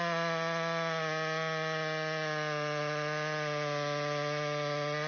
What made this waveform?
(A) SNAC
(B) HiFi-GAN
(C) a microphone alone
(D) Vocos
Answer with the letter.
C